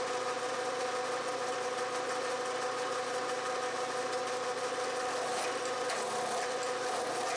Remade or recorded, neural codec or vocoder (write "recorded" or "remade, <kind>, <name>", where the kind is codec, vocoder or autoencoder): recorded